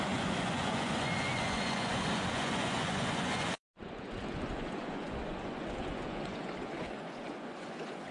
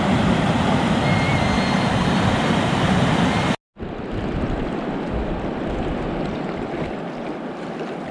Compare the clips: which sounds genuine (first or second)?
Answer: second